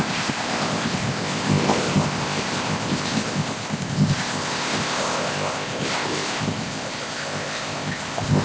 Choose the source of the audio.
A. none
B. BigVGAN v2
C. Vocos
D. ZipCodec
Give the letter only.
D